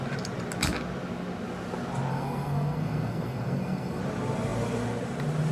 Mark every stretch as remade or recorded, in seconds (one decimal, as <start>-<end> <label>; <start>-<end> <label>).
0.0-2.1 recorded; 2.1-4.0 remade; 4.0-5.5 recorded